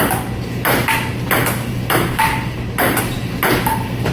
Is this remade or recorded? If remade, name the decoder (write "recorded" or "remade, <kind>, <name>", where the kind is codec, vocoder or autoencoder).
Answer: recorded